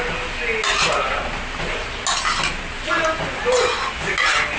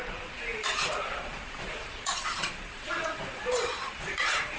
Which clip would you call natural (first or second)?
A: first